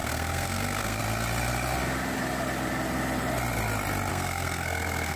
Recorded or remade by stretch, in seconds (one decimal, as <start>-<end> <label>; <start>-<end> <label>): 0.0-1.0 remade; 1.0-4.1 recorded; 4.1-5.2 remade